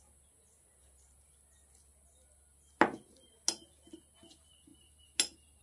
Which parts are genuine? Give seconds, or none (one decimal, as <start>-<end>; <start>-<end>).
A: 0.0-5.6